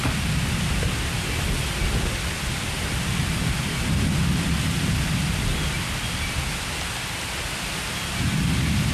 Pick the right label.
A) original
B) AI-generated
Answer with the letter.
A